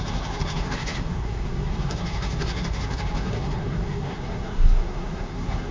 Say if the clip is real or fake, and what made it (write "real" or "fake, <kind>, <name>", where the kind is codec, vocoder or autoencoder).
fake, codec, SNAC